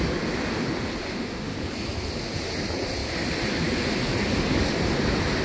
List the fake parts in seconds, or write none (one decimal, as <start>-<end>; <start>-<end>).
1.0-1.7